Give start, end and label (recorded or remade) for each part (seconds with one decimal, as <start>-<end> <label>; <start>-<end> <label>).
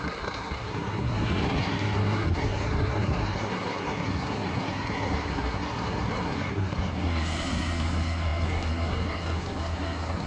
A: 0.0-10.3 remade